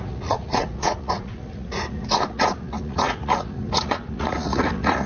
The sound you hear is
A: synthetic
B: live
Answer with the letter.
A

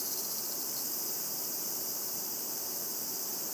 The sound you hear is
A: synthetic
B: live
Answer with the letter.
A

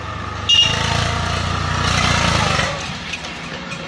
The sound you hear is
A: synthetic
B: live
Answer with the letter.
B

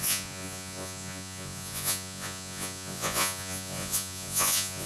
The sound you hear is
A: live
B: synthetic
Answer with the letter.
B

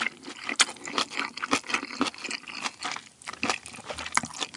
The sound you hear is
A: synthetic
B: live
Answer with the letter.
B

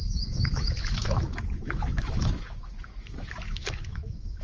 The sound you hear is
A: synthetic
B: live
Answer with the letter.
A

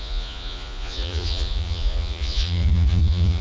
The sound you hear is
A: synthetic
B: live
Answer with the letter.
A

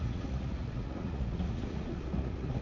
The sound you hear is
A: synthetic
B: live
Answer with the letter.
A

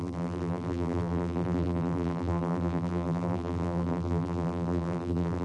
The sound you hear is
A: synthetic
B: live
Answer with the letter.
A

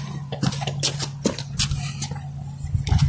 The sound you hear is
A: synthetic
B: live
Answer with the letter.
B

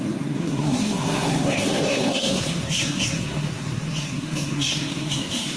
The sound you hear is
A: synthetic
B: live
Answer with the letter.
A